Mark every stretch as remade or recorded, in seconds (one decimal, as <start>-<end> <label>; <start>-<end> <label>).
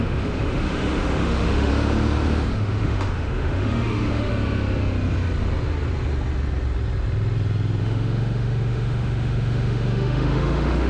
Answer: 0.0-1.7 remade; 1.7-2.5 recorded; 2.5-4.3 remade; 4.3-7.8 recorded; 7.8-10.9 remade